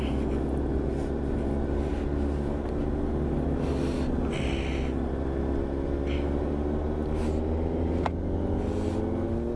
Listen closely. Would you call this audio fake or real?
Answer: real